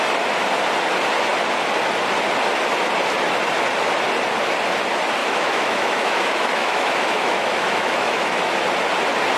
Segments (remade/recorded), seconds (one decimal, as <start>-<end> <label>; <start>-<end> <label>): 0.0-5.2 recorded; 5.2-8.4 remade; 8.4-9.4 recorded